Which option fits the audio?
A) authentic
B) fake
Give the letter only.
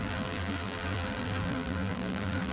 B